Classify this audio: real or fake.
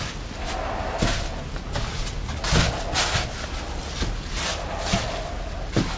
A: real